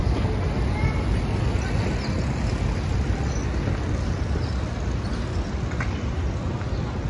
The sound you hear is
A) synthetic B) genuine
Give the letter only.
B